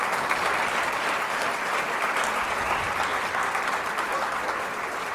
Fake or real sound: real